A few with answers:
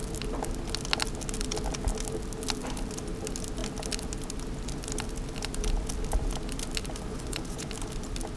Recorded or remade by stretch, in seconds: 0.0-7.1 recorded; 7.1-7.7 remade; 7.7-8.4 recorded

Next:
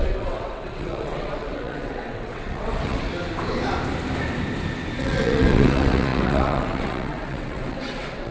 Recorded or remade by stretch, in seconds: 0.0-3.1 remade; 3.1-5.0 recorded; 5.0-8.3 remade

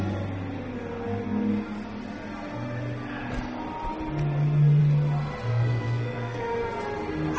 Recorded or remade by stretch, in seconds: 0.0-5.5 recorded; 5.5-6.4 remade; 6.4-7.4 recorded

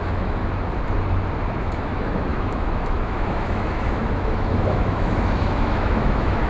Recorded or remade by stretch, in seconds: 0.0-0.4 remade; 0.4-1.5 recorded; 1.5-6.5 remade

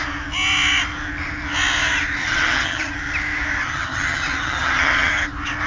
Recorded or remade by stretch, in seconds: 0.0-2.2 recorded; 2.2-2.9 remade; 2.9-3.6 recorded; 3.6-5.1 remade; 5.1-5.7 recorded